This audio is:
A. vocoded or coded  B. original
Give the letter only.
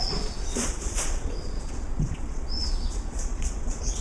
A